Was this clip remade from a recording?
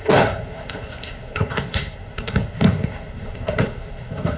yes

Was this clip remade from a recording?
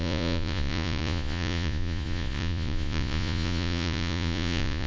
yes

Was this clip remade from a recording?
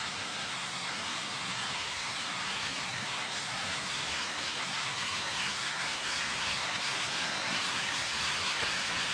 yes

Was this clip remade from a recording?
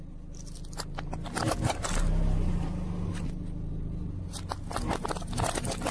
no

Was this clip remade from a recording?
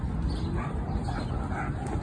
no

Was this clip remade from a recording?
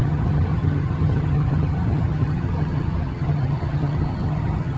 yes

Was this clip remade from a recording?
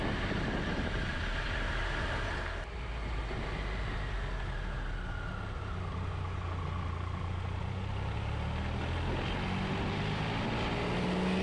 no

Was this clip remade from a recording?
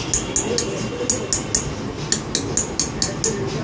no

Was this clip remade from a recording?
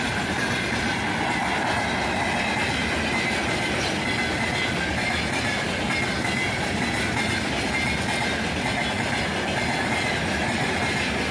no